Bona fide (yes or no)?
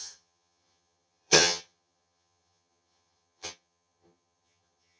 no